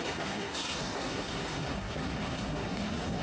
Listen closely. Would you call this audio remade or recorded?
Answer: remade